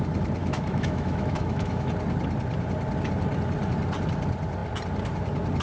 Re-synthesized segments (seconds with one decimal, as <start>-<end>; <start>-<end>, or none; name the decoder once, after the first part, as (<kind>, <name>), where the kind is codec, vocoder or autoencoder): 0.4-1.9 (autoencoder, DAC-VAE)